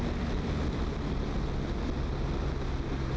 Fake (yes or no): no